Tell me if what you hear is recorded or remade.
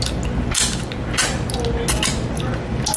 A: recorded